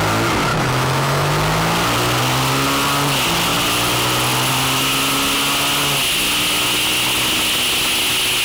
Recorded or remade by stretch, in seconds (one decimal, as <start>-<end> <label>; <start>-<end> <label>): 0.0-0.5 recorded; 0.5-1.3 remade; 1.3-8.4 recorded